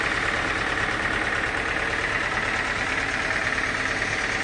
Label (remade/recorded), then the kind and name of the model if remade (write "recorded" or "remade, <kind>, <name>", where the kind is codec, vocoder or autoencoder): recorded